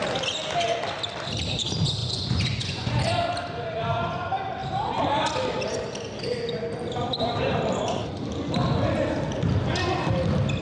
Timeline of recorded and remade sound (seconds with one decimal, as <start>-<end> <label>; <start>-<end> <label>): 0.0-2.0 recorded; 2.0-3.0 remade; 3.0-10.6 recorded